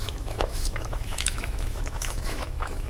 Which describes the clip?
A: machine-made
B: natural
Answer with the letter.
A